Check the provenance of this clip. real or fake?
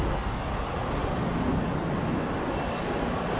real